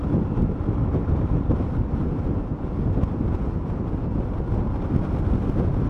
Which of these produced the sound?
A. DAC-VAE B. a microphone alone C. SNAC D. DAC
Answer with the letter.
B